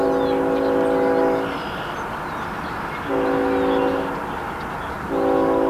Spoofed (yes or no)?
no